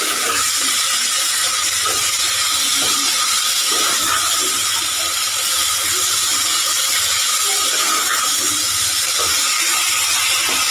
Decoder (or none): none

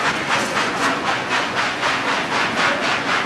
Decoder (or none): vocoder, Vocos